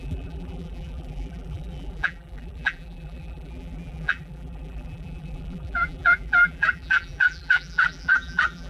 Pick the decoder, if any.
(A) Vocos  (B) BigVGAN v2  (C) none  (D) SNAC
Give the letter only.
B